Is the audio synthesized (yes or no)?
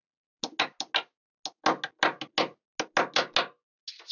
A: no